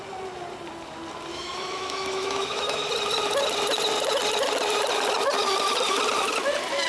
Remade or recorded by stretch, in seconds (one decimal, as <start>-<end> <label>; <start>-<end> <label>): 0.0-1.3 recorded; 1.3-2.9 remade; 2.9-6.9 recorded